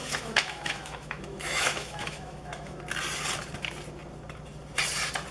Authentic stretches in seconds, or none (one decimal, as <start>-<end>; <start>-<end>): 2.8-5.3